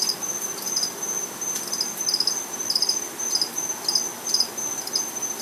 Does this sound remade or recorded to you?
recorded